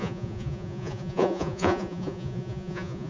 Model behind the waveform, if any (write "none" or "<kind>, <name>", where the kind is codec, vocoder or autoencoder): vocoder, Vocos